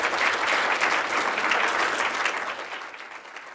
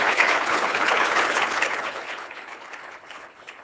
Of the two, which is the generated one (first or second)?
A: second